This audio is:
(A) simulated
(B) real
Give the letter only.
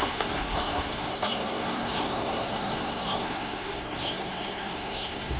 A